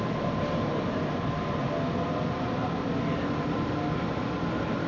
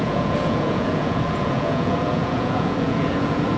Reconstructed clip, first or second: second